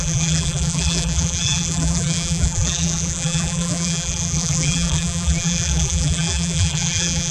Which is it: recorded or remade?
remade